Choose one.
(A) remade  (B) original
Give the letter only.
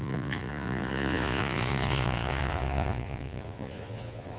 A